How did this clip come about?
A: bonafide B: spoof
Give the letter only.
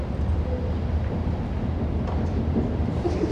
A